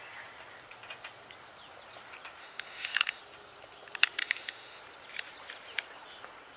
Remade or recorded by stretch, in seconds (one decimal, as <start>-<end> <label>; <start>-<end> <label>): 0.0-2.4 recorded; 2.4-3.2 remade; 3.2-4.2 recorded; 4.2-4.8 remade; 4.8-6.6 recorded

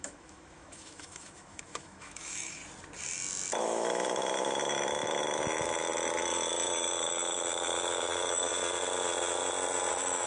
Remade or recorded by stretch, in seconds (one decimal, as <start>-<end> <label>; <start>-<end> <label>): 0.0-2.6 remade; 2.6-3.6 recorded; 3.6-5.9 remade; 5.9-6.7 recorded; 6.7-8.5 remade; 8.5-9.9 recorded; 9.9-10.3 remade

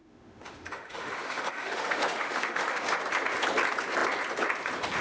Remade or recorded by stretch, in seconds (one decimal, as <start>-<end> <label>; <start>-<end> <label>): 0.0-3.0 remade; 3.0-5.0 recorded

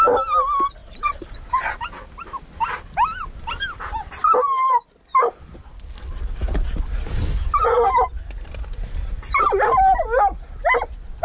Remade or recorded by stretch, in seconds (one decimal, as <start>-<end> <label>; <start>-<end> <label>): 0.0-11.2 recorded

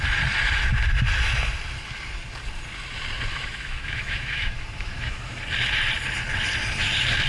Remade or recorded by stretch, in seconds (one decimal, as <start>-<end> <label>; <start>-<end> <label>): 0.0-3.3 recorded; 3.3-5.3 remade; 5.3-7.3 recorded

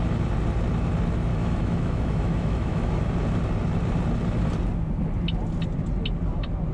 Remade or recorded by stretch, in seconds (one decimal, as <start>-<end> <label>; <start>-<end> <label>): 0.0-1.3 recorded; 1.3-3.1 remade; 3.1-6.7 recorded